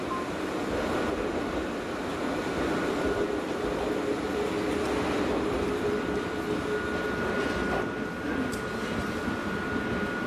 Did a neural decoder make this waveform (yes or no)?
no